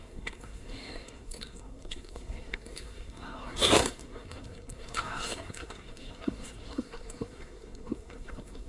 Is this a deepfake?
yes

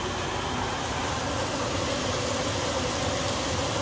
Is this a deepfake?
no